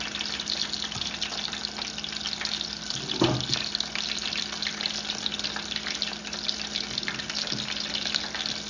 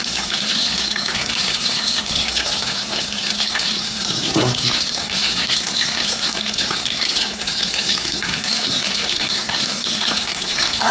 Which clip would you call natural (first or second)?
first